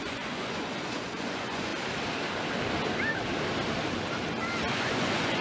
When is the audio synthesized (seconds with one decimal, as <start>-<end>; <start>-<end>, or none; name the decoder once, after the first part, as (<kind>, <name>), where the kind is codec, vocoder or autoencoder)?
0.0-1.7 (vocoder, Vocos); 4.7-5.4